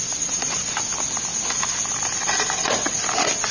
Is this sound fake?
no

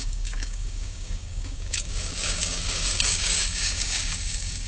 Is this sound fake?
yes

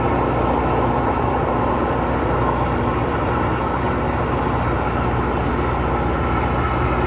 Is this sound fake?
no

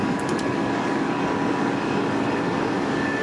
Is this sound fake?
yes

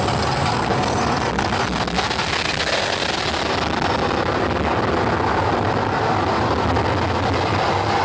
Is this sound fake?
no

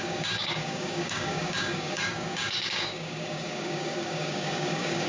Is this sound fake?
yes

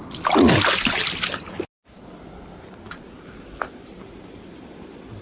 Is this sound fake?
no